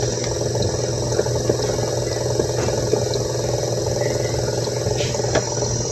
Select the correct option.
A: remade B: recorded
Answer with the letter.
B